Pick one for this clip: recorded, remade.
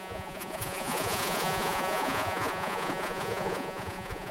remade